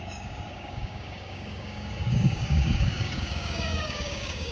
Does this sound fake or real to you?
fake